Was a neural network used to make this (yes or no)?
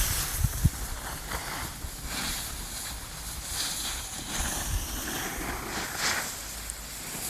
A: no